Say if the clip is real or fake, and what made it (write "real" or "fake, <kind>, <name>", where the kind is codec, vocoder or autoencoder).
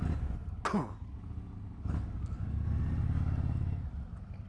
real